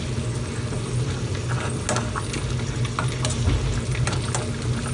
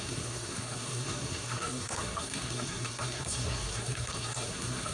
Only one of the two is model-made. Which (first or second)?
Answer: second